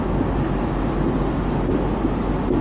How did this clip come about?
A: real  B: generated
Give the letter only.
A